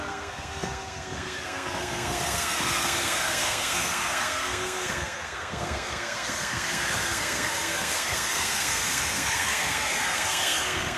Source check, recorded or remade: remade